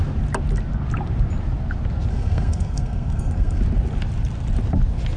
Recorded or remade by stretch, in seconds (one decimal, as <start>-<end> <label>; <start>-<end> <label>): 0.0-2.1 recorded; 2.1-3.6 remade; 3.6-5.2 recorded